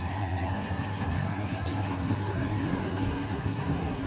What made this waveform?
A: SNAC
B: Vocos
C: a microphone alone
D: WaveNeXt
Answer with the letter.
A